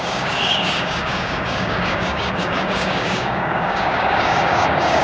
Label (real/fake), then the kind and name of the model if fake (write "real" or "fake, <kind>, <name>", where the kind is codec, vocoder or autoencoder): fake, codec, DAC